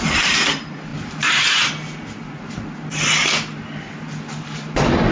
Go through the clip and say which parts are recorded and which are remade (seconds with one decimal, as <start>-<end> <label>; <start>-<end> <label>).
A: 0.0-5.1 recorded